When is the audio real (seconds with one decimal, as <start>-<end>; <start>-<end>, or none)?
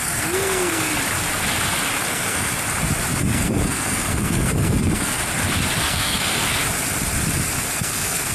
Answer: 0.9-2.1; 2.5-3.2; 5.2-5.8; 6.6-7.7